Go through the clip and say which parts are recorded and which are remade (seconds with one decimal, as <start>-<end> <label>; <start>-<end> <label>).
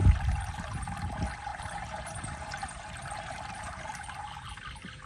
0.0-0.7 remade; 0.7-1.5 recorded; 1.5-4.6 remade; 4.6-5.1 recorded